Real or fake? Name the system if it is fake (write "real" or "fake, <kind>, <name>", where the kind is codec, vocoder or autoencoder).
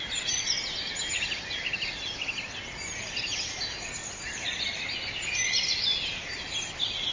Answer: real